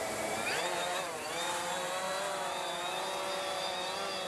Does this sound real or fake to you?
fake